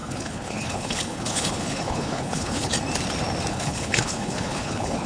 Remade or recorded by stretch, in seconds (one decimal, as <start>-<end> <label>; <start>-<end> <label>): 0.0-2.7 remade; 2.7-3.5 recorded; 3.5-5.1 remade